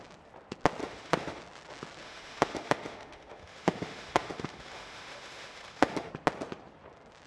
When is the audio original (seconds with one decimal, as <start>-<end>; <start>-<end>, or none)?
0.0-0.8; 1.4-2.0; 6.1-7.3